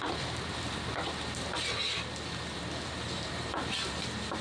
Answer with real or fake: fake